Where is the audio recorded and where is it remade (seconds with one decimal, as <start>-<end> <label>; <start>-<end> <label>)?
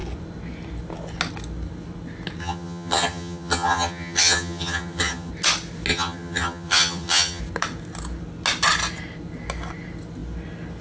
0.0-2.4 recorded; 2.4-5.3 remade; 5.3-5.9 recorded; 5.9-7.4 remade; 7.4-10.8 recorded